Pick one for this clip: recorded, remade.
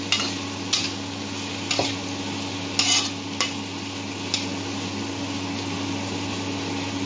recorded